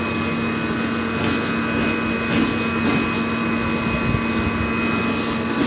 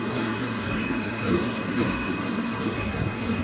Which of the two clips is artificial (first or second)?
second